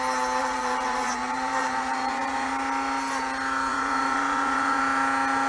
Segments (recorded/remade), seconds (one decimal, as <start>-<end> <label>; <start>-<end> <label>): 0.0-0.4 recorded; 0.4-2.5 remade; 2.5-3.7 recorded; 3.7-4.8 remade; 4.8-5.5 recorded